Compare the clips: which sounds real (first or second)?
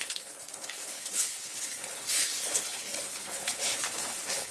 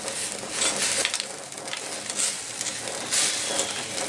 second